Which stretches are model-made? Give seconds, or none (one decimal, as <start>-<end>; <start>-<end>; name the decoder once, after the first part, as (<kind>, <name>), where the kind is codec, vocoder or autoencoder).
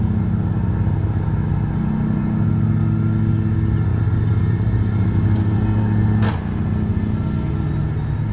none